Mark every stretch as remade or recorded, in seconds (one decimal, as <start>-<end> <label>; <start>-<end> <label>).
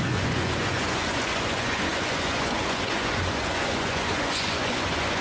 0.0-5.2 remade